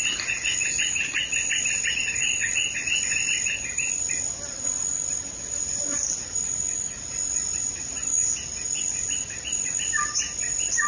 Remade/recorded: recorded